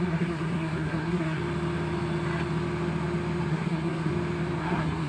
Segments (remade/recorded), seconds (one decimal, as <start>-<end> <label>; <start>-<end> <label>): 0.0-1.4 remade; 1.4-3.5 recorded; 3.5-4.1 remade; 4.1-4.6 recorded; 4.6-5.1 remade

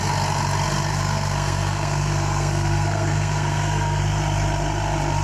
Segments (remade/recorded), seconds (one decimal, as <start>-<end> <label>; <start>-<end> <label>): 0.0-0.9 recorded; 0.9-4.0 remade; 4.0-5.2 recorded

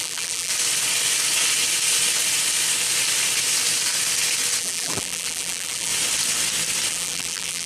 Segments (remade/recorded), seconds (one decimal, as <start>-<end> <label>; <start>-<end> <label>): 0.0-0.5 remade; 0.5-4.6 recorded; 4.6-5.9 remade; 5.9-6.9 recorded; 6.9-7.7 remade

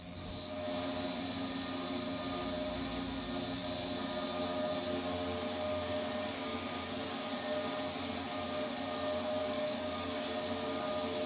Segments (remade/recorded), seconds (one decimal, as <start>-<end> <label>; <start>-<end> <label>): 0.0-9.4 recorded; 9.4-10.3 remade; 10.3-11.3 recorded

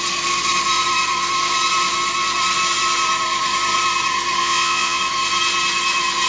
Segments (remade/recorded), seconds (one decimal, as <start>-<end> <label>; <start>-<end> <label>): 0.0-4.4 recorded; 4.4-5.0 remade; 5.0-6.3 recorded